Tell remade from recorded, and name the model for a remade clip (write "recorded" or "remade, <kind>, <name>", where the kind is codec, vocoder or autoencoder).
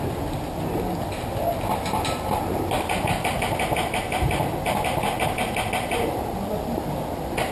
recorded